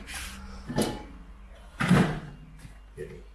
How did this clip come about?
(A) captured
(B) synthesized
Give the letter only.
A